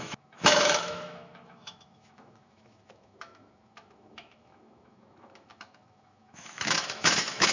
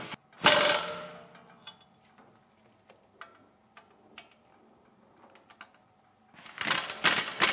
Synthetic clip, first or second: first